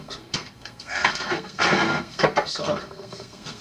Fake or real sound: fake